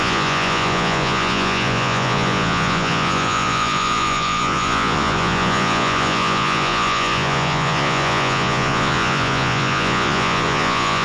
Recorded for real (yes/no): no